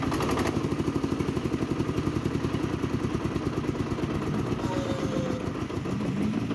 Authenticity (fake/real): real